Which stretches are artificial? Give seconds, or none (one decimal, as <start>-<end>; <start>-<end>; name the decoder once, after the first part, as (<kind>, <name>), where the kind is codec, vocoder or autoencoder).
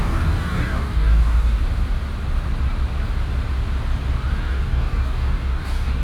0.0-1.6 (codec, DAC); 4.4-6.0